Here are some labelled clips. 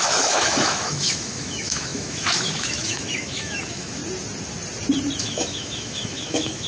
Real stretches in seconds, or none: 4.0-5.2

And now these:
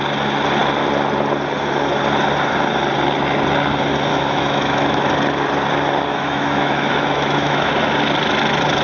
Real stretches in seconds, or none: 0.0-4.1; 5.1-6.1; 7.7-8.8

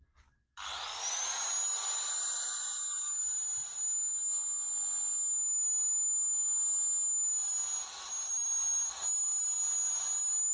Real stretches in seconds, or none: 0.0-10.5